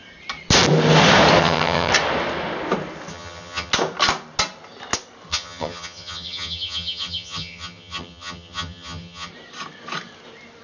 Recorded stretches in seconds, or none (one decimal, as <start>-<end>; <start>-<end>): 0.0-1.4; 1.9-3.1; 3.7-5.3; 9.3-10.6